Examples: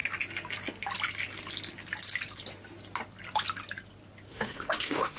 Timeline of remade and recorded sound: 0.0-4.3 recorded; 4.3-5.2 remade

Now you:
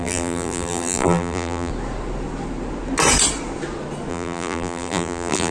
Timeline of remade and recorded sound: 0.0-1.7 remade; 1.7-4.1 recorded; 4.1-5.5 remade